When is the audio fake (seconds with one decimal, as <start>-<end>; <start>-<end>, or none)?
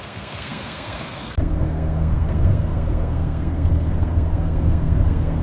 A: 0.0-5.4